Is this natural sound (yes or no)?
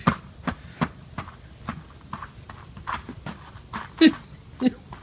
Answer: yes